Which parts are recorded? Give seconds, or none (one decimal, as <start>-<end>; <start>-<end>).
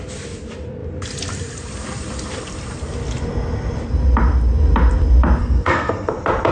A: 0.0-5.4; 6.1-6.5